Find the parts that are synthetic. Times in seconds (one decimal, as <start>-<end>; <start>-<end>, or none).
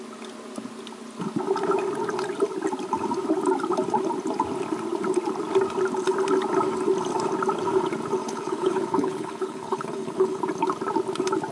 8.2-10.4